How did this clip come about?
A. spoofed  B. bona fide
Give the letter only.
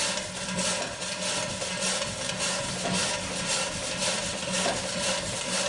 B